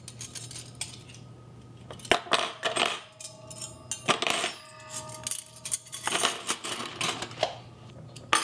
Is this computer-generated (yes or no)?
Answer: no